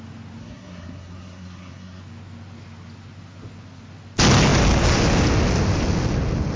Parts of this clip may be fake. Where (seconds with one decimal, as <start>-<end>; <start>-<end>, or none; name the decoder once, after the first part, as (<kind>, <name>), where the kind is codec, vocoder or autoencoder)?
0.4-2.0 (codec, SNAC)